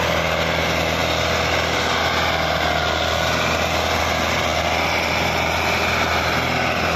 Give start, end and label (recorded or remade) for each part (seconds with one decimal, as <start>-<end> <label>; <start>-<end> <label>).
0.0-7.0 recorded

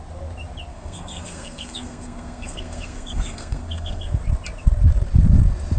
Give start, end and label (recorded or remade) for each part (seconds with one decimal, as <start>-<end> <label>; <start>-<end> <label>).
0.0-0.7 recorded; 0.7-4.2 remade; 4.2-5.8 recorded